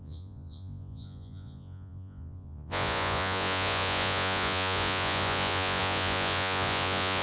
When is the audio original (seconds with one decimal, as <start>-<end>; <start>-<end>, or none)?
none